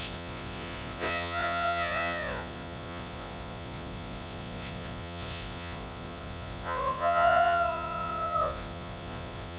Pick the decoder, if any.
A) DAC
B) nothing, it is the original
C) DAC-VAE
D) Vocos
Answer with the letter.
D